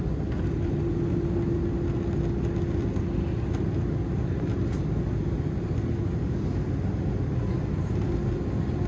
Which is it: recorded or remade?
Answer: recorded